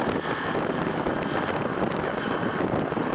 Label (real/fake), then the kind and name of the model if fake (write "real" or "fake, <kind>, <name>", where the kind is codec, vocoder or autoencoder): real